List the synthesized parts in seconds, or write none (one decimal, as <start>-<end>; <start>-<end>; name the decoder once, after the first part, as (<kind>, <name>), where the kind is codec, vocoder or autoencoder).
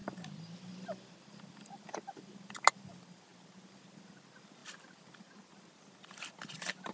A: none